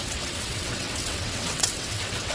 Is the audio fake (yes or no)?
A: yes